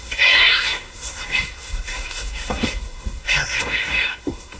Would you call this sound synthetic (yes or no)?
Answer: yes